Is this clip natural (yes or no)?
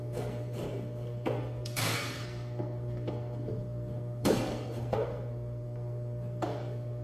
no